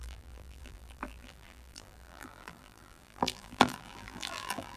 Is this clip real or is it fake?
fake